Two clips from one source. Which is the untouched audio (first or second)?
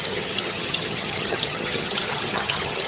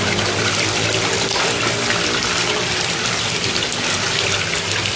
second